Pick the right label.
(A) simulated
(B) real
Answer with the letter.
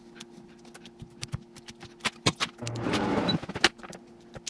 B